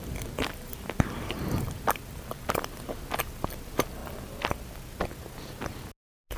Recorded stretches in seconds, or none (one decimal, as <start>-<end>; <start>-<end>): 0.0-6.4